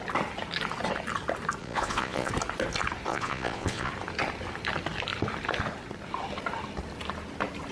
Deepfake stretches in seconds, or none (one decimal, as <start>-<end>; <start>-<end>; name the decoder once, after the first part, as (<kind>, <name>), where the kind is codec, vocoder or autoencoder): 1.6-2.3 (vocoder, Vocos); 3.1-3.9